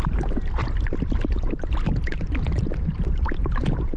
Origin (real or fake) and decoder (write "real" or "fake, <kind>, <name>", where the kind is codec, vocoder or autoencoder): real